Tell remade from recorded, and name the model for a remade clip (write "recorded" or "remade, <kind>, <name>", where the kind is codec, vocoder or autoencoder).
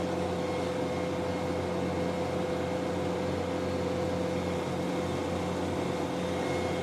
recorded